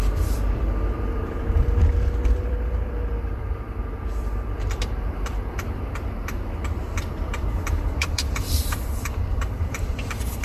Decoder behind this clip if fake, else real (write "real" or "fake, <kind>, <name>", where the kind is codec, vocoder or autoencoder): fake, vocoder, BigVGAN v2